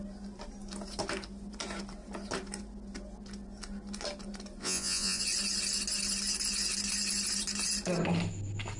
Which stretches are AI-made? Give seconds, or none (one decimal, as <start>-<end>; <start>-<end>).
4.6-5.2